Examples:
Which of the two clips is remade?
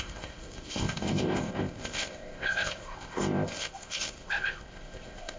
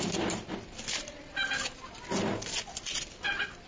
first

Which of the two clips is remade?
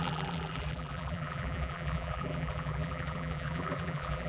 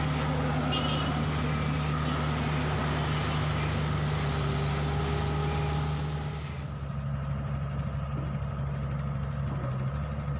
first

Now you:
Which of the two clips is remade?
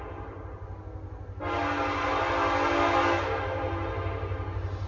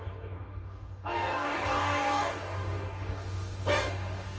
second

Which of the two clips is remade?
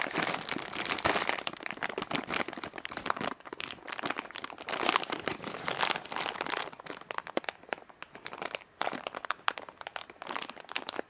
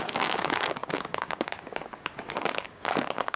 second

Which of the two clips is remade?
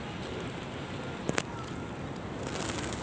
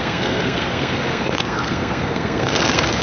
second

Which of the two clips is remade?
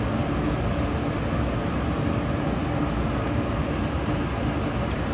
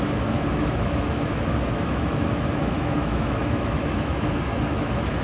second